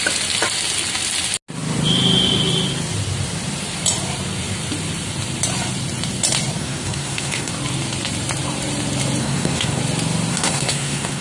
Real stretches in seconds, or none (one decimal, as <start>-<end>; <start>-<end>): 0.0-6.6; 7.5-9.2; 9.8-10.3